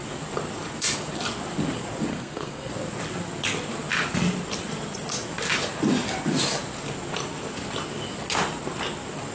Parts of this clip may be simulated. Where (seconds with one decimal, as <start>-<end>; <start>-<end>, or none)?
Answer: 2.1-2.7